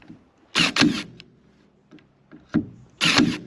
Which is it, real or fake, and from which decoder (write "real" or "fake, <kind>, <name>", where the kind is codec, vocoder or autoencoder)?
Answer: real